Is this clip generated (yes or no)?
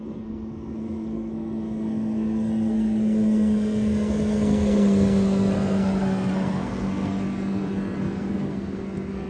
yes